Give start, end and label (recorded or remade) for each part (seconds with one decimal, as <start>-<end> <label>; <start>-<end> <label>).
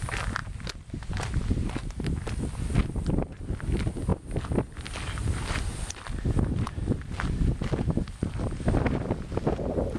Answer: 0.0-10.0 recorded